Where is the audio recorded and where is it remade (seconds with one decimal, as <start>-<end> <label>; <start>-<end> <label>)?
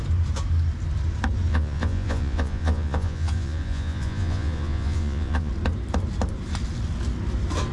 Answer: 0.0-1.5 recorded; 1.5-5.5 remade; 5.5-7.7 recorded